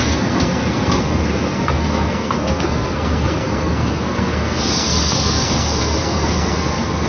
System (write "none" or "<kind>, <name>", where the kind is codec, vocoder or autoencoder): codec, SNAC